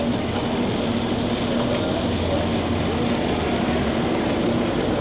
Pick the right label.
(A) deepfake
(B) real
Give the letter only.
B